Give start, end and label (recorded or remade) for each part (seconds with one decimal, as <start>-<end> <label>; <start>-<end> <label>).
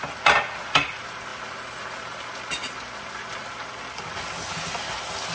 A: 0.0-5.3 recorded